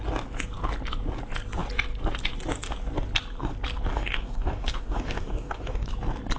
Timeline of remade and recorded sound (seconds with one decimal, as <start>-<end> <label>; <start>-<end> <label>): 0.0-3.9 recorded; 3.9-5.9 remade; 5.9-6.4 recorded